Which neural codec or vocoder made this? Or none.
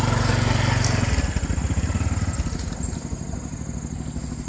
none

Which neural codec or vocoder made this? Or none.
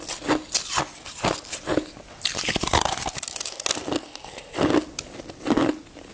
none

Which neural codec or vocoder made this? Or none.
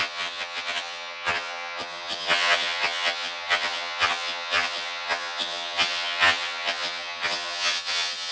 vocoder, HiFi-GAN